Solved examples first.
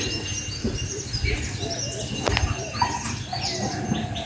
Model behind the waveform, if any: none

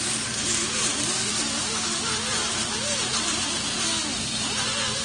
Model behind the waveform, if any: vocoder, BigVGAN v2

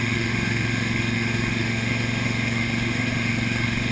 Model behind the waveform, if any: autoencoder, DAC-VAE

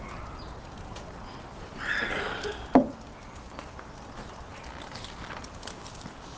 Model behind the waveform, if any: none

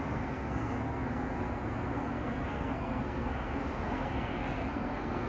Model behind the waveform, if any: codec, SNAC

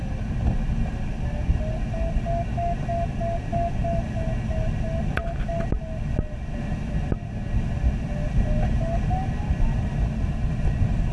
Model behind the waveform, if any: none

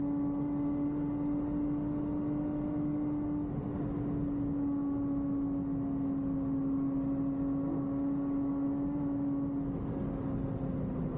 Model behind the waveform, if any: none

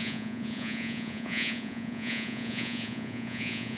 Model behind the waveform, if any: vocoder, Vocos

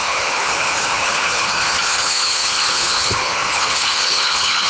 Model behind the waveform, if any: codec, HILCodec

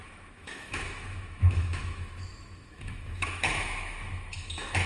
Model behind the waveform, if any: autoencoder, DAC-VAE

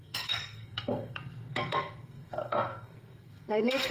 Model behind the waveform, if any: codec, SNAC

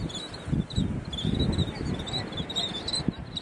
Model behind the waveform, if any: none